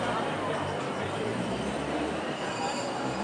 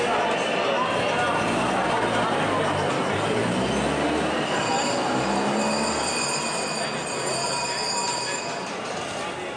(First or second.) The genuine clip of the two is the second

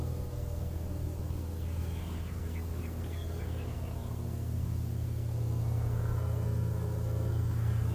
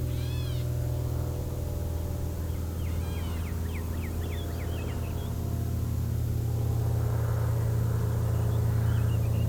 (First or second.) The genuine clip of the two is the second